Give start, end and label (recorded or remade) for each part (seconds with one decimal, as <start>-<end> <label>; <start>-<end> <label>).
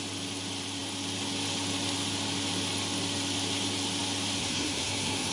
0.0-4.4 recorded; 4.4-5.3 remade